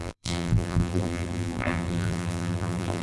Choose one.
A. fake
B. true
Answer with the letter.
A